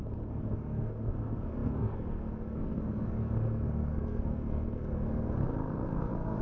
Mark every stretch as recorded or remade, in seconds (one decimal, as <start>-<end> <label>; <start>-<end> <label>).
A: 0.0-6.4 remade